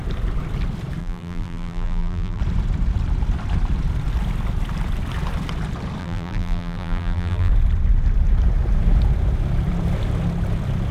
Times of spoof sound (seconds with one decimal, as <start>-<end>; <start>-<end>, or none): 1.0-2.4; 6.0-7.5